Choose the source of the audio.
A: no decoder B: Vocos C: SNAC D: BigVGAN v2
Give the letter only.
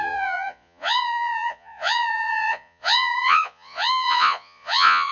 B